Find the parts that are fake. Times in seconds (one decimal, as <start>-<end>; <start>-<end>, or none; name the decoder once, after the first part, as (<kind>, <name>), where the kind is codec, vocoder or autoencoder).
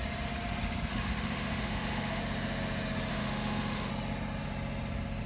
0.9-2.2 (autoencoder, DAC-VAE); 3.1-3.9